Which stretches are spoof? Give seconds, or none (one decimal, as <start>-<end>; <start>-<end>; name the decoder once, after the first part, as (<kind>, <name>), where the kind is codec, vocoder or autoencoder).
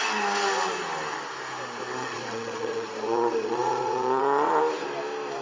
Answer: 2.0-4.6 (vocoder, Vocos)